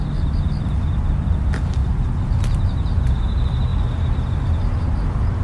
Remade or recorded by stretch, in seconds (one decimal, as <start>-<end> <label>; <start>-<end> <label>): 0.0-5.4 recorded